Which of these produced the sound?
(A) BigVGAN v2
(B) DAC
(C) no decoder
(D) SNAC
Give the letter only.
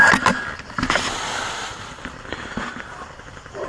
A